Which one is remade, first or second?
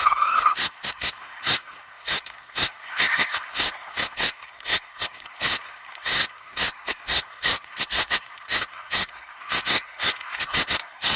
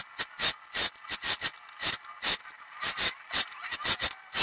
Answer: first